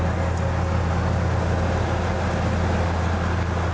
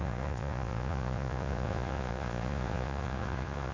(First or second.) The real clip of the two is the first